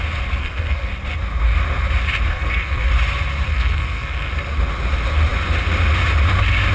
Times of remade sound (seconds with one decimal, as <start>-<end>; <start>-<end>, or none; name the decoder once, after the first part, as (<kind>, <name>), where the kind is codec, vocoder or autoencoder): 0.4-0.9 (codec, SNAC); 2.3-2.9; 3.5-4.3